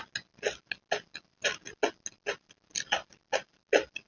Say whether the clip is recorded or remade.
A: recorded